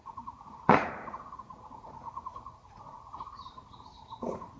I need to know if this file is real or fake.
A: fake